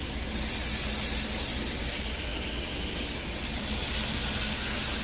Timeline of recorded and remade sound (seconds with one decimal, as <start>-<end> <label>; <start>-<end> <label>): 0.0-5.0 recorded